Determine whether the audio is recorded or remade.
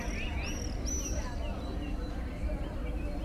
recorded